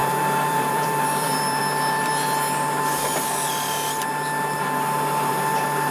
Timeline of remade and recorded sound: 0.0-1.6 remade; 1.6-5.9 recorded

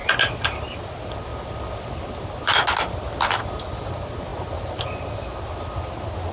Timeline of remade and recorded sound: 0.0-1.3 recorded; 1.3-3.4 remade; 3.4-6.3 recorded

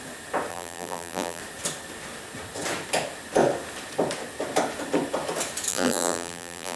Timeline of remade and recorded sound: 0.0-0.5 recorded; 0.5-1.4 remade; 1.4-5.7 recorded; 5.7-6.8 remade

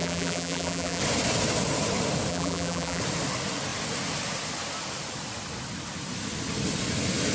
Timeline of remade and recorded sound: 0.0-1.0 remade; 1.0-2.3 recorded; 2.3-3.0 remade; 3.0-7.3 recorded